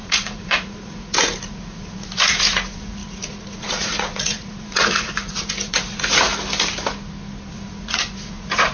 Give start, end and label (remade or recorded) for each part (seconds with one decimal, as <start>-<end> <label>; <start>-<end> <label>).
0.0-6.3 remade; 6.3-7.5 recorded; 7.5-8.7 remade